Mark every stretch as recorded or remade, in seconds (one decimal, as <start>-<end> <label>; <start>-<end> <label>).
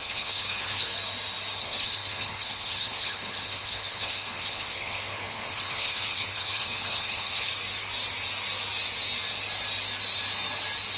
0.0-0.9 remade; 0.9-1.6 recorded; 1.6-7.5 remade; 7.5-11.0 recorded